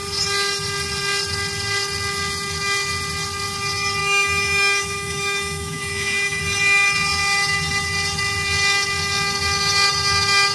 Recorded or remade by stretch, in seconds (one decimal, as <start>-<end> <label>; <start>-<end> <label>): 0.0-4.0 recorded; 4.0-6.4 remade; 6.4-10.5 recorded